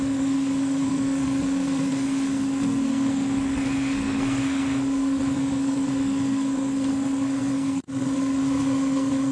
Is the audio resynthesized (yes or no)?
yes